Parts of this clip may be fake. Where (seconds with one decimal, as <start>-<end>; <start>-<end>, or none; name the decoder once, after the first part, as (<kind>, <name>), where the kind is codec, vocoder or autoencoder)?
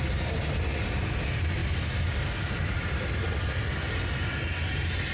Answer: none